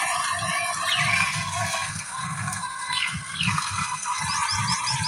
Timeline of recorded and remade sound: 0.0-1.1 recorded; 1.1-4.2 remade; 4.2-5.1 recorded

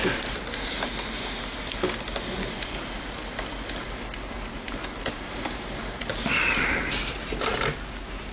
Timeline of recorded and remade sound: 0.0-8.3 recorded